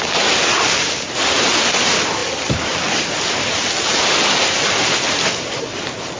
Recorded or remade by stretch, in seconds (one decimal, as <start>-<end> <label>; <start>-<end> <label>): 0.0-6.2 recorded